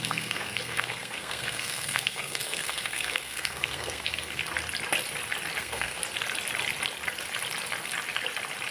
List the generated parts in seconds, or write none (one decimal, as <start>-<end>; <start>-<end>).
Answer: 0.0-4.4; 5.6-6.0